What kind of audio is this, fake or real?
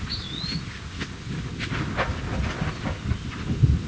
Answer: real